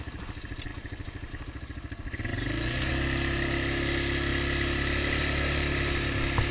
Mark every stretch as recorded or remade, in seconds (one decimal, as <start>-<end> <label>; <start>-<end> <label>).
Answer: 0.0-6.5 recorded